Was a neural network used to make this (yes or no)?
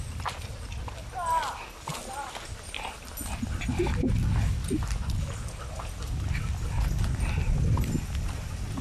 no